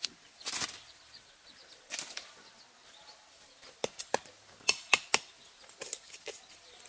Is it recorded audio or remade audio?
recorded